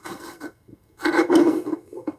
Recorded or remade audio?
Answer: remade